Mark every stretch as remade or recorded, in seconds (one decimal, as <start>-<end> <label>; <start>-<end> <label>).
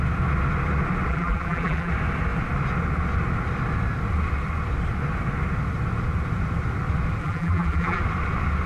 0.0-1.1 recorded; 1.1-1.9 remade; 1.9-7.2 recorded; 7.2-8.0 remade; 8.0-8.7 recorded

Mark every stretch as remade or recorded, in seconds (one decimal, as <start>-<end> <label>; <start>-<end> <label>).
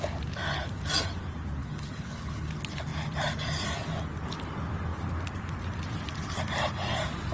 0.0-1.6 recorded; 1.6-2.5 remade; 2.5-7.3 recorded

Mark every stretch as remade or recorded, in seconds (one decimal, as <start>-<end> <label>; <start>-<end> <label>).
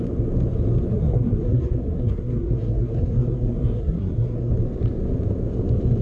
0.0-0.9 recorded; 0.9-4.5 remade; 4.5-6.0 recorded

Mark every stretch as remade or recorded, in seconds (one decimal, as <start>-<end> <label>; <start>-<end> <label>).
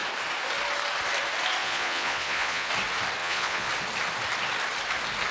0.0-1.6 recorded; 1.6-2.7 remade; 2.7-3.2 recorded; 3.2-3.7 remade; 3.7-5.3 recorded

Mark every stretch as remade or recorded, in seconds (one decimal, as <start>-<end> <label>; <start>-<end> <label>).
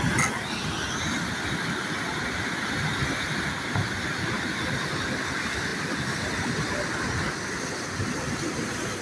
0.0-9.0 recorded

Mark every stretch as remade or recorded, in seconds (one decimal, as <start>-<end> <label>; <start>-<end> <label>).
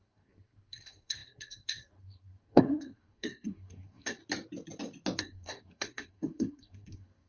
0.0-4.2 remade; 4.2-5.2 recorded; 5.2-7.3 remade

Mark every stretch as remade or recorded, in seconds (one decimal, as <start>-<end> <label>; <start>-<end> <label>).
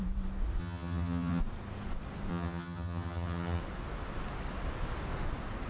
0.0-0.6 recorded; 0.6-1.4 remade; 1.4-2.3 recorded; 2.3-3.6 remade; 3.6-5.7 recorded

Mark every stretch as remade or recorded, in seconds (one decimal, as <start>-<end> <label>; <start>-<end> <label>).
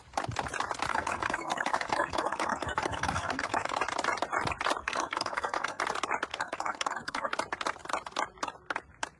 0.0-0.9 recorded; 0.9-3.8 remade; 3.8-4.8 recorded; 4.8-5.8 remade; 5.8-6.3 recorded; 6.3-7.3 remade; 7.3-9.2 recorded